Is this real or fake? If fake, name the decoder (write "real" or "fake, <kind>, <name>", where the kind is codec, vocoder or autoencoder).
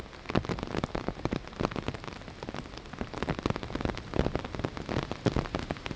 real